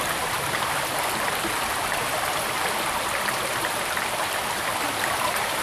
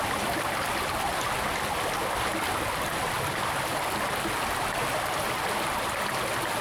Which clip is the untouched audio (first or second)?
second